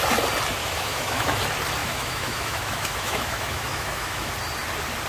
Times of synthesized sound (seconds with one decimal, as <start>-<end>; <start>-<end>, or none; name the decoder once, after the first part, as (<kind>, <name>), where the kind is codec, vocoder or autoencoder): 0.6-1.4 (autoencoder, DAC-VAE); 1.8-4.3